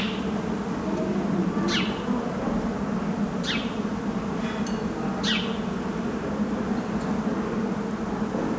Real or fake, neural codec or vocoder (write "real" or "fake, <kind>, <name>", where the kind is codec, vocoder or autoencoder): real